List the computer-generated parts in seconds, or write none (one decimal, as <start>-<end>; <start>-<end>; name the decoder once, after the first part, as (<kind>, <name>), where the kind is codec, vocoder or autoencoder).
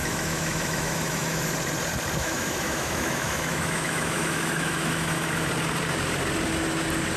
0.0-1.5 (autoencoder, DAC-VAE); 2.2-5.5